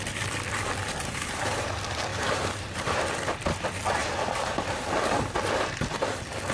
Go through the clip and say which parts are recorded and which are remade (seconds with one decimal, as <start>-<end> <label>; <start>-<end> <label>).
0.0-0.8 recorded; 0.8-1.7 remade; 1.7-2.1 recorded; 2.1-3.0 remade; 3.0-4.0 recorded; 4.0-4.8 remade; 4.8-6.5 recorded